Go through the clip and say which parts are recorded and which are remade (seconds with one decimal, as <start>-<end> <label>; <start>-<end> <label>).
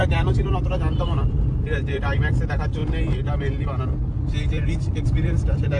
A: 0.0-1.6 recorded; 1.6-2.8 remade; 2.8-4.7 recorded; 4.7-5.8 remade